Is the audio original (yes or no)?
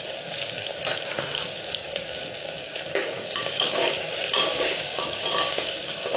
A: no